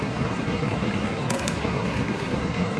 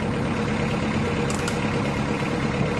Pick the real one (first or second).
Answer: second